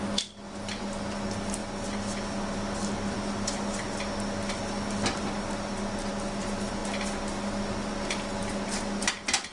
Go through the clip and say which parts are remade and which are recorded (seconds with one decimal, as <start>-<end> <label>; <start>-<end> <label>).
0.0-9.5 recorded